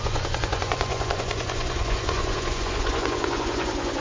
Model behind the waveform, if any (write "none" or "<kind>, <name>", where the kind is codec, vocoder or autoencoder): vocoder, Vocos